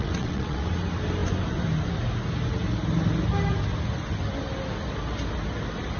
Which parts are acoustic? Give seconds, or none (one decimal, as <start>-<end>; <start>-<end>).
0.7-6.0